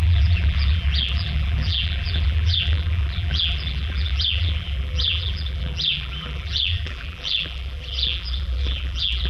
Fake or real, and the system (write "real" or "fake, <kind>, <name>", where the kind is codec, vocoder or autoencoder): fake, vocoder, BigVGAN v2